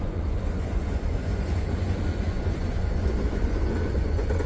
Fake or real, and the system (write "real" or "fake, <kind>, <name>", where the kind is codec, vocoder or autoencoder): fake, vocoder, Vocos